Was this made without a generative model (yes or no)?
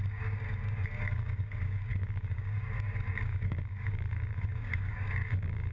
no